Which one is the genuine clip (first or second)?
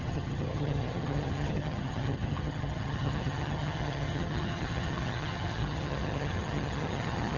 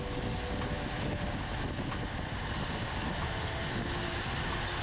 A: second